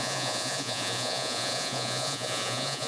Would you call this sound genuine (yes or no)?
no